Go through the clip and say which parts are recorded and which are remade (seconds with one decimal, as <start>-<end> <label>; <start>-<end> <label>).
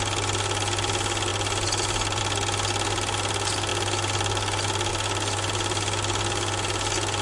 0.0-7.2 recorded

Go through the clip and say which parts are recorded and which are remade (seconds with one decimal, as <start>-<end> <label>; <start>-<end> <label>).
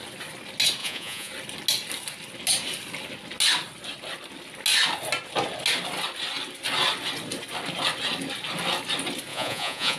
0.0-0.8 recorded; 0.8-1.3 remade; 1.3-9.3 recorded; 9.3-10.0 remade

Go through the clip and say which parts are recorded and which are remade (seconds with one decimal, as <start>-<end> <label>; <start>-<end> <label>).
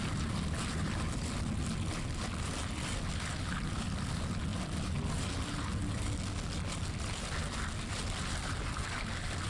0.0-9.5 recorded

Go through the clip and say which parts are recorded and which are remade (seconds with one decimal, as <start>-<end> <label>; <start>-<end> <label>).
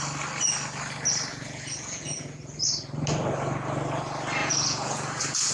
0.0-1.3 recorded; 1.3-2.5 remade; 2.5-4.4 recorded; 4.4-5.5 remade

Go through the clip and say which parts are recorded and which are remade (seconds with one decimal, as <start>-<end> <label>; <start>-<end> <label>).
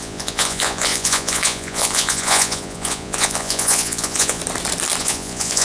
0.0-4.4 remade; 4.4-5.0 recorded; 5.0-5.6 remade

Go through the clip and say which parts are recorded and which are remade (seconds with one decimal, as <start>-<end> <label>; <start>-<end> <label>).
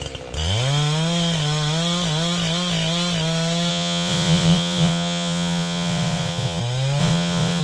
0.0-3.7 recorded; 3.7-6.6 remade; 6.6-7.0 recorded; 7.0-7.6 remade